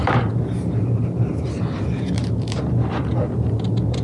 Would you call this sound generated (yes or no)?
no